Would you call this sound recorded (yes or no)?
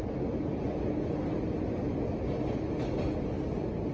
yes